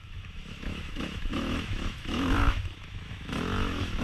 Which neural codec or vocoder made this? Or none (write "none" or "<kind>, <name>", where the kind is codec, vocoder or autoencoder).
autoencoder, DAC-VAE